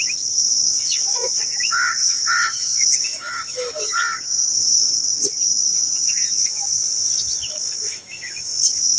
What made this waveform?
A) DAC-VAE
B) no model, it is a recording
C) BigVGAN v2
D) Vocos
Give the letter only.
A